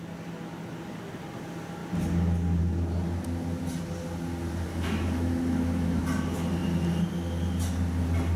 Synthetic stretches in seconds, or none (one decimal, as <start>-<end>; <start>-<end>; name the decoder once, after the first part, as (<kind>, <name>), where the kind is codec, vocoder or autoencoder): 4.7-6.0 (autoencoder, DAC-VAE)